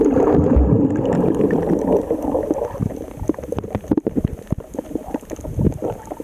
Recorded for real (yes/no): yes